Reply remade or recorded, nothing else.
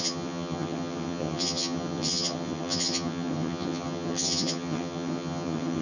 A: remade